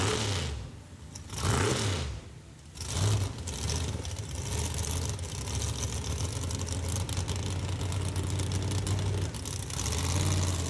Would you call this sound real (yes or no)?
yes